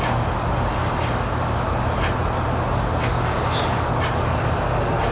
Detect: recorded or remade recorded